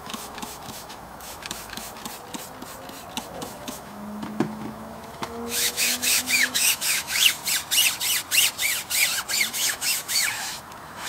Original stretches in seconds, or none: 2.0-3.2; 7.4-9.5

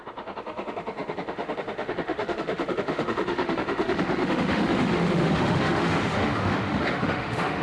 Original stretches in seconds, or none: none